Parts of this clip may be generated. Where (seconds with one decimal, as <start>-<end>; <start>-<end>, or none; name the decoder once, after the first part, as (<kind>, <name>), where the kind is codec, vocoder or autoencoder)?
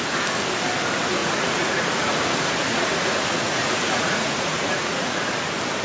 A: 1.2-2.2 (vocoder, Vocos); 2.6-5.2